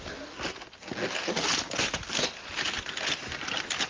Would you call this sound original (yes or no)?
yes